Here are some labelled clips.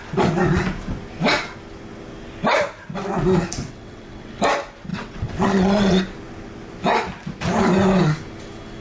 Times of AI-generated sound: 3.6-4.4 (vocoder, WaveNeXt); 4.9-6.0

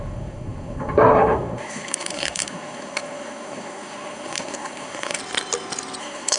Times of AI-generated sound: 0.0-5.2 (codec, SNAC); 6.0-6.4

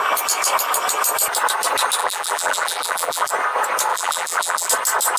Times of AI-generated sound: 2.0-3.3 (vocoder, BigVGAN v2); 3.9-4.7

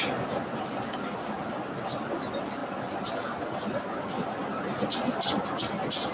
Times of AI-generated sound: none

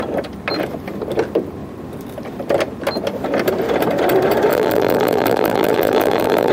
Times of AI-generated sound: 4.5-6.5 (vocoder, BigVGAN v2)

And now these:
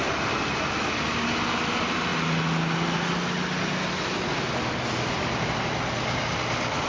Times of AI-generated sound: none